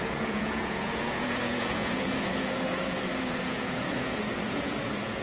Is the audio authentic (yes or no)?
no